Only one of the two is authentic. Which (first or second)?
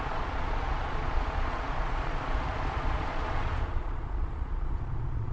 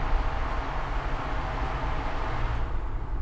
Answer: second